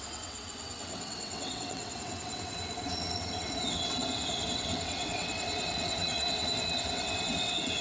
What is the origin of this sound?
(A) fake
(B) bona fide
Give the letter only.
A